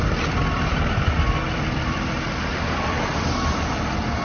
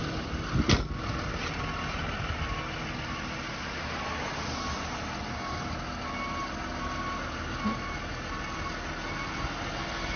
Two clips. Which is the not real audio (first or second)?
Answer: first